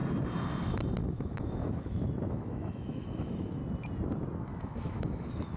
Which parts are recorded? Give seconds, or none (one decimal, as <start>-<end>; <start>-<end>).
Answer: 0.0-1.1; 3.6-4.6